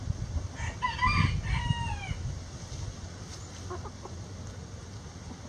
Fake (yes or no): no